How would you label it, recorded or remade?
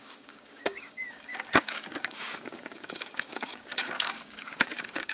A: remade